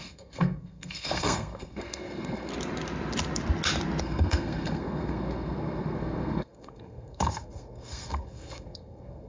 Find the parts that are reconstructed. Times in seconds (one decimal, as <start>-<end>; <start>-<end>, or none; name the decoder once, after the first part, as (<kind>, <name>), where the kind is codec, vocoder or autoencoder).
0.0-2.5 (codec, SNAC); 4.0-9.3